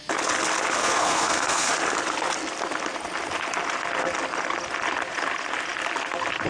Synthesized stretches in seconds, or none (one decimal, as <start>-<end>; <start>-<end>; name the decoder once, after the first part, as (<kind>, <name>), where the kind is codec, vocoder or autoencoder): 0.8-1.7 (codec, SNAC)

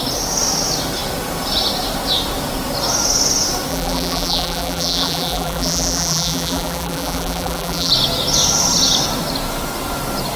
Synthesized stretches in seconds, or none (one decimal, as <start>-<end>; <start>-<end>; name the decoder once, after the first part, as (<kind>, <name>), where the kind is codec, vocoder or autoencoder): 3.7-7.9 (vocoder, BigVGAN v2)